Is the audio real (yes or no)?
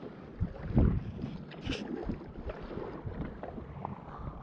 yes